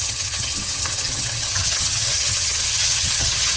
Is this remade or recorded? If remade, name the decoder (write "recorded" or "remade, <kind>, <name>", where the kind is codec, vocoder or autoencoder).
remade, vocoder, HiFi-GAN